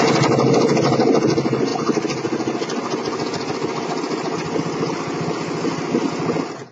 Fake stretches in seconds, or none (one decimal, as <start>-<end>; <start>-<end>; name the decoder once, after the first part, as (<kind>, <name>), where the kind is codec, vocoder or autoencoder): none